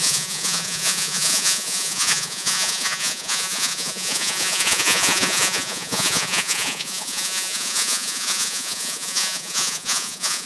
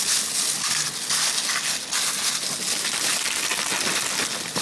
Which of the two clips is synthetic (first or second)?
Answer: first